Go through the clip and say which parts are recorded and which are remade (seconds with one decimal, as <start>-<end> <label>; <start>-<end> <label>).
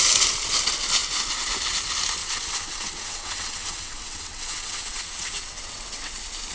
0.0-2.2 recorded; 2.2-6.1 remade; 6.1-6.5 recorded